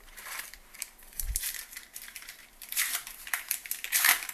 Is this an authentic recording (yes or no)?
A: no